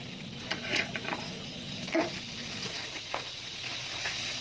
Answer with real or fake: fake